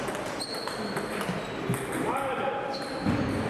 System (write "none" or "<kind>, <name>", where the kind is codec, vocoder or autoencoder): vocoder, BigVGAN v2